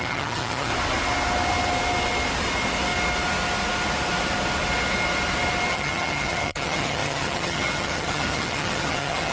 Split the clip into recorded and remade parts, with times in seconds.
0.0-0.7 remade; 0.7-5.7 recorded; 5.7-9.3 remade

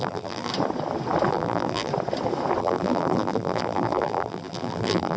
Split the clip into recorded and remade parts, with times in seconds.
0.0-0.5 remade; 0.5-1.3 recorded; 1.3-1.9 remade; 1.9-2.6 recorded; 2.6-5.2 remade